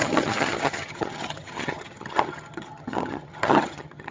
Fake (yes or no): yes